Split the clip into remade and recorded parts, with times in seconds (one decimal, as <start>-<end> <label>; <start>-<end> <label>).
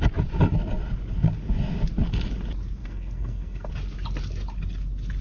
0.0-2.8 recorded; 2.8-3.7 remade; 3.7-5.2 recorded